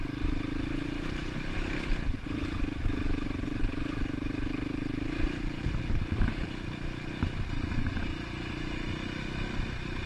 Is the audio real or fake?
real